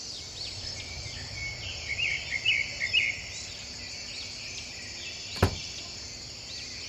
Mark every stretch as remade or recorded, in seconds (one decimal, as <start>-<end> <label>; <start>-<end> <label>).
0.0-6.9 recorded